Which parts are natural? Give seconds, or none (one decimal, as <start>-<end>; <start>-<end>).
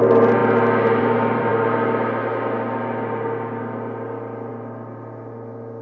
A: 0.4-1.0